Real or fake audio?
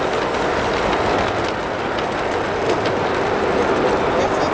real